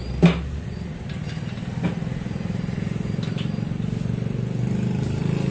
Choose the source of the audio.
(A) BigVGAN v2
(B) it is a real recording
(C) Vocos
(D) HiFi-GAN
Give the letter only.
B